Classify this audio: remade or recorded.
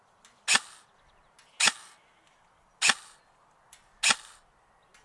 recorded